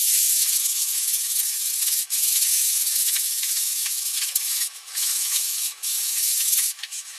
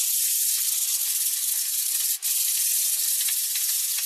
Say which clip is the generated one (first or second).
first